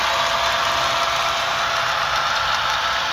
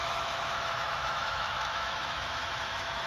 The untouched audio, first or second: first